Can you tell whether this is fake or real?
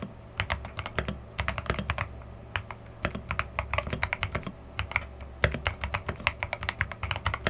real